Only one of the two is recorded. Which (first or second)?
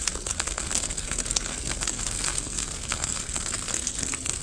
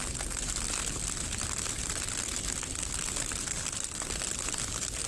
second